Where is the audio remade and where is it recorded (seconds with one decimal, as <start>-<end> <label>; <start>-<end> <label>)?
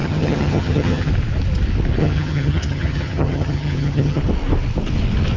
0.0-1.1 remade; 1.1-2.0 recorded; 2.0-4.2 remade; 4.2-5.4 recorded